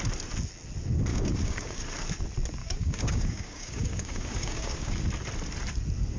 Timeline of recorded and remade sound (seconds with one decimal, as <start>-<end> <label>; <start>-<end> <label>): 0.0-1.1 recorded; 1.1-1.8 remade; 1.8-2.6 recorded; 2.6-5.0 remade; 5.0-6.2 recorded